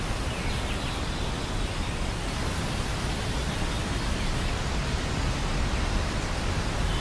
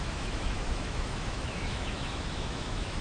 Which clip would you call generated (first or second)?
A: second